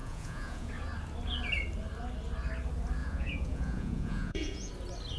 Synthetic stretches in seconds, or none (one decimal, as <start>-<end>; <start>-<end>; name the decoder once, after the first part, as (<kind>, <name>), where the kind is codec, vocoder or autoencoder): 0.0-0.7 (vocoder, Vocos); 3.0-4.7